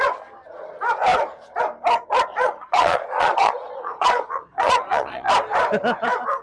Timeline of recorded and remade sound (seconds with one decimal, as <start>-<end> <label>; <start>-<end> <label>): 0.0-2.3 recorded; 2.3-5.3 remade; 5.3-6.4 recorded